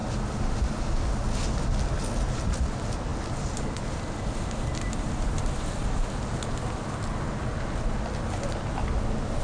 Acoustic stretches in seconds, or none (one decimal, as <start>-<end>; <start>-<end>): 0.0-9.4

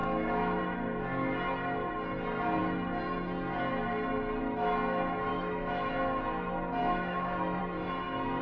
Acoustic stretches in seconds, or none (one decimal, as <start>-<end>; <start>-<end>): 0.6-5.3; 5.9-6.8; 7.6-8.4

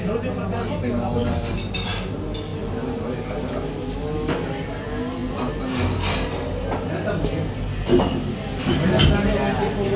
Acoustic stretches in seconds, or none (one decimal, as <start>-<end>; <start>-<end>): 0.0-10.0

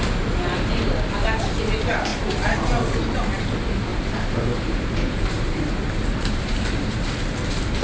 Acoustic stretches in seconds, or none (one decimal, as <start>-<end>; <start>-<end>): 0.0-3.9; 7.0-7.8

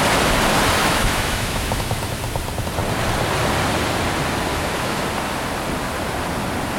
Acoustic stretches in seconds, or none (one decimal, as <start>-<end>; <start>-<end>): 0.0-0.8; 2.2-4.5; 5.0-6.8

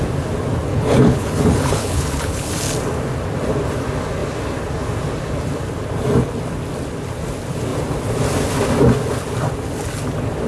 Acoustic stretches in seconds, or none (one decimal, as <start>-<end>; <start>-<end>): 0.0-0.7; 2.5-10.5

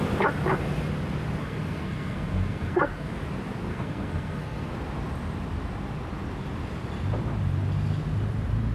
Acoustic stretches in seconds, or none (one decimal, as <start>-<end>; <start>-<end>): 0.0-1.4; 3.1-3.7; 4.7-8.7